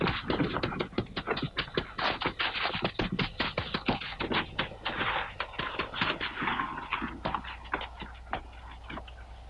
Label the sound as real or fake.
real